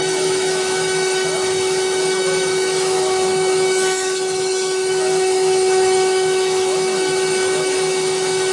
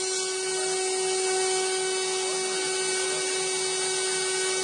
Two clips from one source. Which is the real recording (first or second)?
second